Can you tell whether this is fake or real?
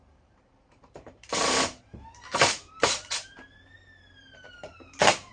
fake